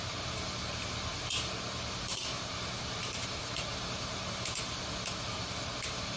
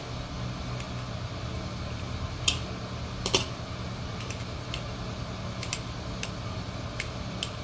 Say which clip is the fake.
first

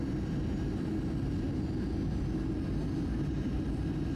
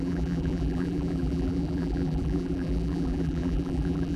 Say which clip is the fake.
second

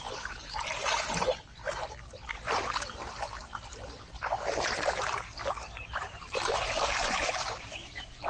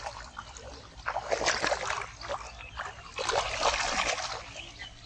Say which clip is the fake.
first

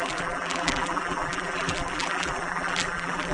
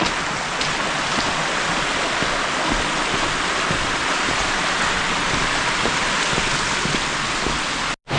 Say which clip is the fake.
first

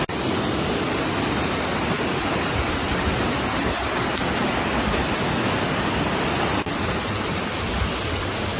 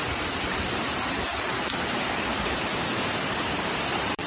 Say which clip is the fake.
second